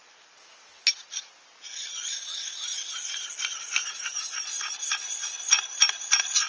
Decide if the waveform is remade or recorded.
recorded